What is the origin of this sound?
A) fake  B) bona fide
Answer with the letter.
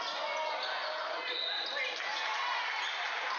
B